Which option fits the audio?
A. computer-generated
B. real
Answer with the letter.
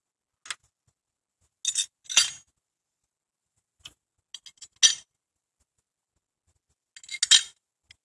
B